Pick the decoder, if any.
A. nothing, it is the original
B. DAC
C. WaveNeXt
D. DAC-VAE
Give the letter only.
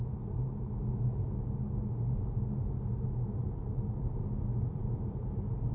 A